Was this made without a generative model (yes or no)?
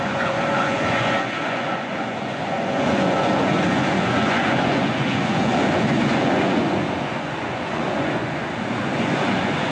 no